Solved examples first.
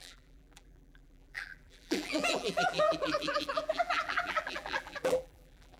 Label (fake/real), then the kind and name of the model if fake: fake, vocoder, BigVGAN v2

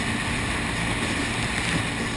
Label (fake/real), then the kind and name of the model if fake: real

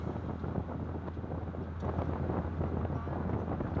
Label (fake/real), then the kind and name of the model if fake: real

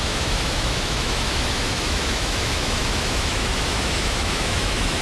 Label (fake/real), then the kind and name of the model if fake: fake, autoencoder, DAC-VAE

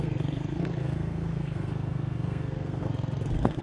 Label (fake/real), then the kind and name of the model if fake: fake, codec, SNAC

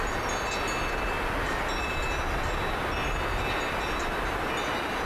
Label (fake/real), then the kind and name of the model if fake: real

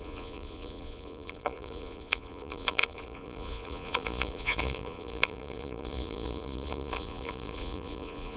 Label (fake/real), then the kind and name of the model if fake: fake, vocoder, Vocos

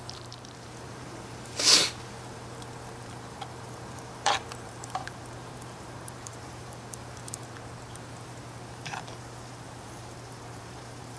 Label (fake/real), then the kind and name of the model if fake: fake, vocoder, BigVGAN v2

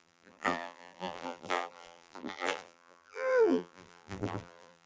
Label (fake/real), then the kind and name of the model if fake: fake, vocoder, BigVGAN v2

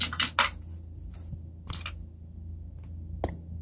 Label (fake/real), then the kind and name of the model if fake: real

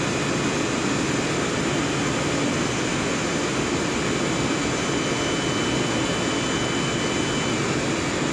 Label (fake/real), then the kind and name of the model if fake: real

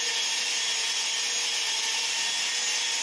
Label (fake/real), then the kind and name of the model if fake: real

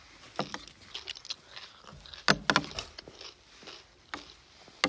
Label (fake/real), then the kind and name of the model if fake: real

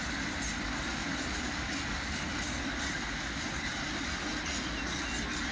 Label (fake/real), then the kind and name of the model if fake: real